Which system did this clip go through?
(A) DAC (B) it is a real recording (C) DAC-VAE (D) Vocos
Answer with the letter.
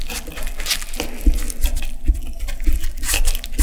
B